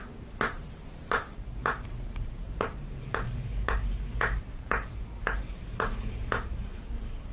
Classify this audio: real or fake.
fake